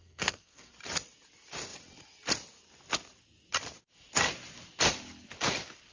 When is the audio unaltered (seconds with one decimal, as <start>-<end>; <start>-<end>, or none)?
0.7-5.9

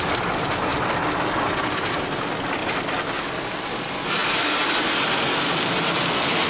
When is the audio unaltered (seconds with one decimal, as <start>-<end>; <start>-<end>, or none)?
0.0-6.5

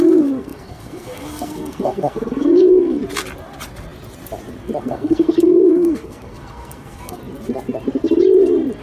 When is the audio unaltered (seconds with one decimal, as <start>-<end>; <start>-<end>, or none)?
3.0-4.8; 7.2-8.8

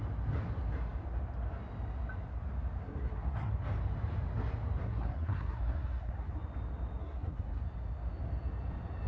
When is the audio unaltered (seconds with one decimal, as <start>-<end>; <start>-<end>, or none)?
0.0-2.8; 3.5-4.8; 6.3-7.0; 7.6-9.1

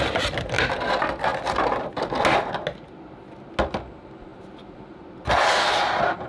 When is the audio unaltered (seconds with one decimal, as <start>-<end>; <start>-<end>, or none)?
0.0-6.3

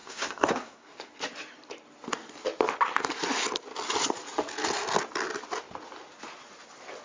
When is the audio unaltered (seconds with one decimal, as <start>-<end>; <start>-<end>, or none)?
1.1-7.0